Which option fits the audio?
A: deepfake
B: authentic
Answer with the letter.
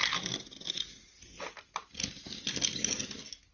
B